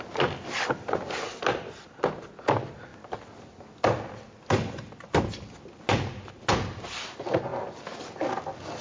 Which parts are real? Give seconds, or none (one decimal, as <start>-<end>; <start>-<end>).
0.0-7.5; 8.0-8.8